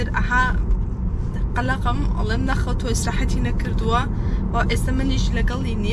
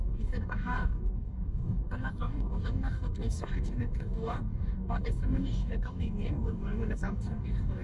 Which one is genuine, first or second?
first